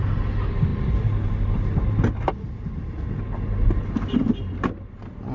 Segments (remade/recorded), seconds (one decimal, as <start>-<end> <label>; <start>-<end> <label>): 0.0-5.3 recorded

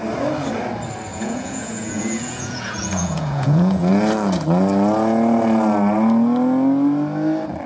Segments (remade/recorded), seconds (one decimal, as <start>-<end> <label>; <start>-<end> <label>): 0.0-1.1 recorded; 1.1-3.9 remade; 3.9-7.7 recorded

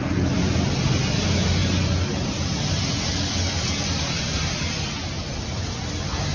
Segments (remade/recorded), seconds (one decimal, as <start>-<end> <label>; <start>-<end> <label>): 0.0-6.3 recorded

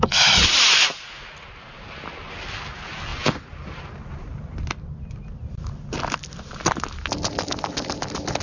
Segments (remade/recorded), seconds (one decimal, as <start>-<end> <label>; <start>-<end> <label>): 0.0-8.4 recorded

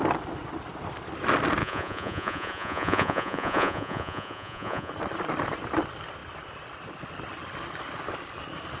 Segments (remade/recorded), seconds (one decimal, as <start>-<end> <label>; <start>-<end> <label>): 0.0-1.6 recorded; 1.6-4.9 remade; 4.9-8.8 recorded